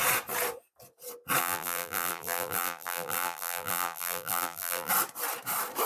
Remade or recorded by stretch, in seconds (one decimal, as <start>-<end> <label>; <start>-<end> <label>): 0.0-1.4 recorded; 1.4-4.9 remade; 4.9-5.9 recorded